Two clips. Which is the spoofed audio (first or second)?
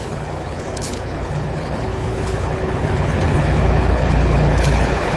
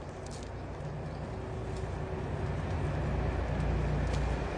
first